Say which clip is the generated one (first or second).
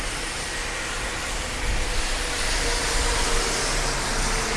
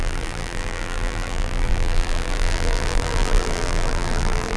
second